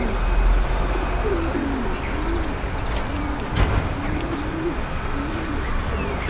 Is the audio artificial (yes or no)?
no